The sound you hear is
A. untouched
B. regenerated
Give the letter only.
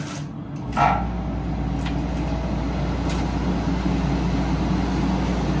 A